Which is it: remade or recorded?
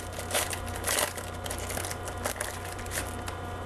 recorded